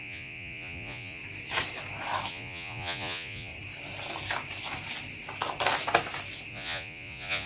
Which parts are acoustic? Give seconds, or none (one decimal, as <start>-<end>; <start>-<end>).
1.2-2.3; 3.5-6.5

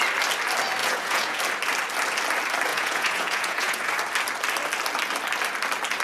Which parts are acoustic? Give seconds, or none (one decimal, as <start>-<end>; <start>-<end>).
0.0-0.8; 1.4-2.7; 3.9-6.0

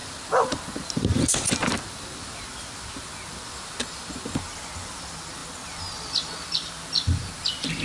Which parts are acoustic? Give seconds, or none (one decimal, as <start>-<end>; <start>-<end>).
0.0-7.8

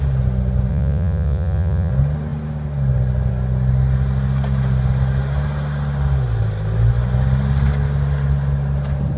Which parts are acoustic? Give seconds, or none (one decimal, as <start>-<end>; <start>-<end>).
0.0-0.7; 1.9-9.2

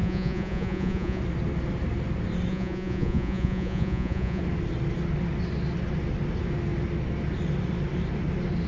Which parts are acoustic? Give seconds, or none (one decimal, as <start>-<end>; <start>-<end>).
1.2-2.5; 4.4-8.7